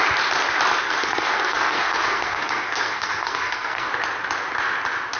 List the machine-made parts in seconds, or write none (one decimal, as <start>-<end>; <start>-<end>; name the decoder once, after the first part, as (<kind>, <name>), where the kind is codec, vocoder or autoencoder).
0.8-3.9 (codec, SNAC)